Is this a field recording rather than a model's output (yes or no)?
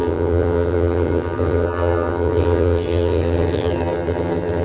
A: no